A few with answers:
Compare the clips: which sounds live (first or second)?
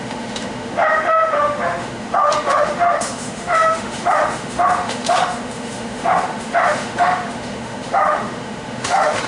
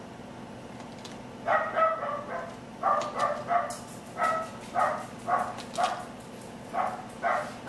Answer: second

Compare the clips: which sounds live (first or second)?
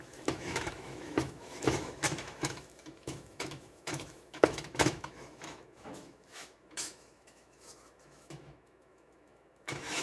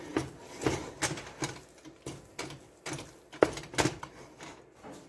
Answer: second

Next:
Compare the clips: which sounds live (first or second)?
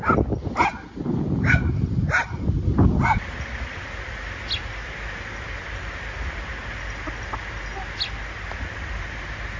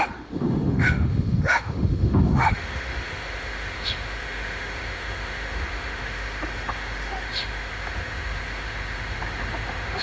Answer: first